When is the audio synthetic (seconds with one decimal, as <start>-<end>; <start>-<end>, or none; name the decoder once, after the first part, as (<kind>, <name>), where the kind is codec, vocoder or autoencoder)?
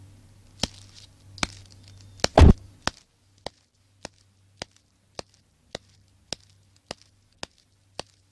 none